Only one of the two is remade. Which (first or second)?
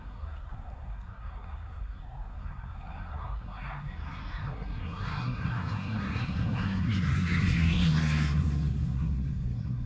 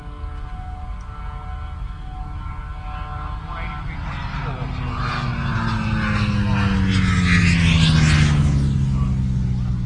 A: first